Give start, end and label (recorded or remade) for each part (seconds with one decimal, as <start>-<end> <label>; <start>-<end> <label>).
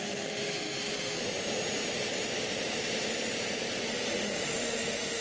0.0-1.2 remade; 1.2-3.9 recorded; 3.9-5.2 remade